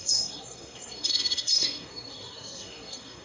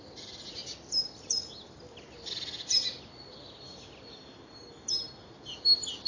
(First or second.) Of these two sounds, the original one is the second